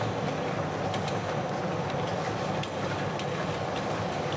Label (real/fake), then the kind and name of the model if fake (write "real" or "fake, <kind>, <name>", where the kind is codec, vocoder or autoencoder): real